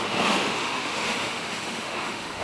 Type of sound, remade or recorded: remade